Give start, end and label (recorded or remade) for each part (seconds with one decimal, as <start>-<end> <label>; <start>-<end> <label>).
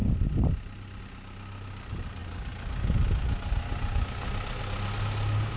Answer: 0.0-5.6 recorded